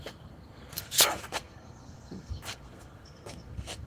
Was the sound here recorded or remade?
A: remade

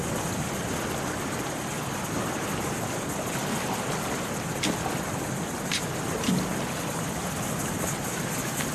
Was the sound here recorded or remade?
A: recorded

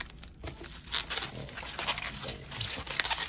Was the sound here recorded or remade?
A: recorded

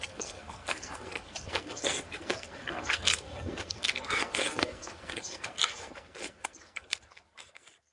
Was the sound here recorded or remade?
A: remade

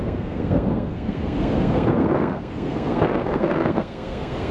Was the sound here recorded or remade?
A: remade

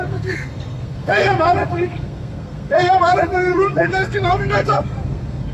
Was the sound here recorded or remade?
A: remade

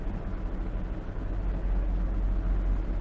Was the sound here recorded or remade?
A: recorded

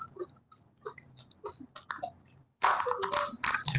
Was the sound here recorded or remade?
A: recorded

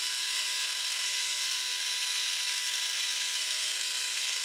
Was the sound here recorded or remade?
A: remade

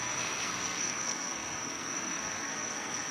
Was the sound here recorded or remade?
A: remade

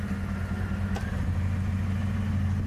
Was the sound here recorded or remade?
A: recorded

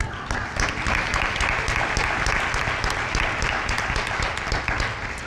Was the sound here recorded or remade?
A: recorded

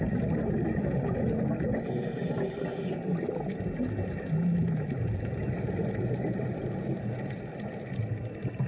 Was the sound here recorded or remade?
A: recorded